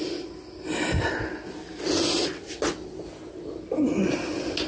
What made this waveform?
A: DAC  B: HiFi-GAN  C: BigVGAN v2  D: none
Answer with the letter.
D